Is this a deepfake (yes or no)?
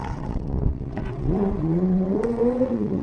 yes